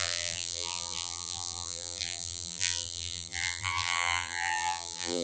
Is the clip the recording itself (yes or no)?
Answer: no